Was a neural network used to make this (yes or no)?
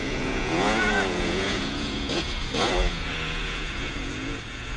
yes